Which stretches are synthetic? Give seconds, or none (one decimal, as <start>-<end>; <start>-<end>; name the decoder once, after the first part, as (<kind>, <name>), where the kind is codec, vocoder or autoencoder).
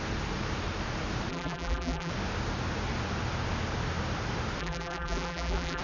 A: 1.3-2.1 (vocoder, BigVGAN v2); 4.6-5.8